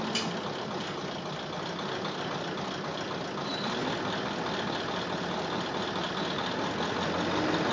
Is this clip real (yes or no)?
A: yes